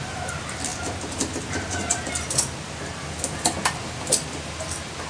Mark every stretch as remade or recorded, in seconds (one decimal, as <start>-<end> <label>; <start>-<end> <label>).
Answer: 0.0-5.1 recorded